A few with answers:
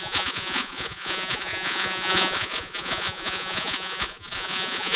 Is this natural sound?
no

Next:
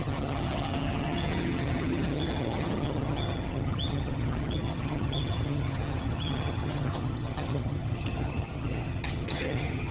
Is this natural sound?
no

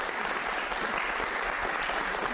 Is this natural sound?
yes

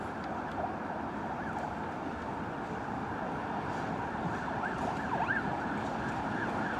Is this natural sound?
yes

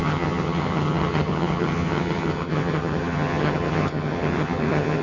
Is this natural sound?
no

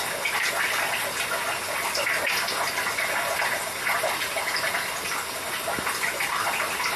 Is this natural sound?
yes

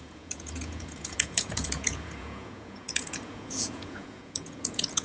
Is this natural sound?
no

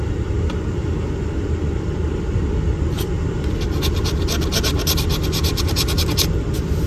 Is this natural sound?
yes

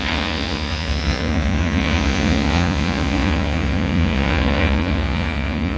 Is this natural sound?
no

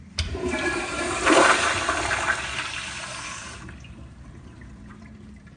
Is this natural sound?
no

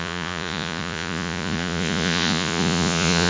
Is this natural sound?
no